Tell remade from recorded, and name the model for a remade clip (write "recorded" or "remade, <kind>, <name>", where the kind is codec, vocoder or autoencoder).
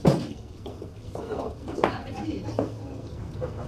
remade, codec, SNAC